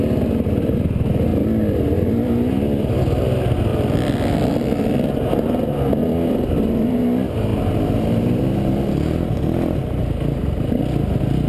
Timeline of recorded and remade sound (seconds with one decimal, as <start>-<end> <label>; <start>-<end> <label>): 0.0-3.7 recorded; 3.7-5.3 remade; 5.3-6.0 recorded; 6.0-6.7 remade; 6.7-11.5 recorded

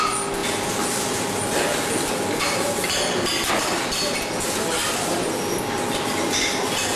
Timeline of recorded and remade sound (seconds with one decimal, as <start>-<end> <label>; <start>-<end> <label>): 0.0-4.8 recorded; 4.8-5.3 remade; 5.3-7.0 recorded

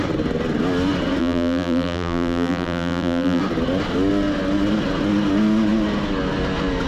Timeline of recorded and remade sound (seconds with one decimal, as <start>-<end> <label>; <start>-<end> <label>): 0.0-1.2 recorded; 1.2-3.4 remade; 3.4-6.9 recorded